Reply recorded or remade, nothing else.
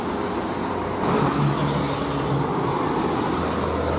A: recorded